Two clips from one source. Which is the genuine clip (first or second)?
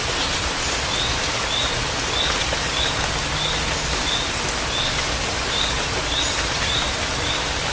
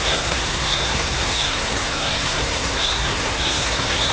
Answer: first